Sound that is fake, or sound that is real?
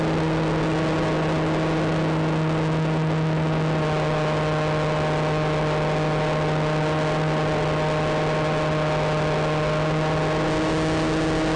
real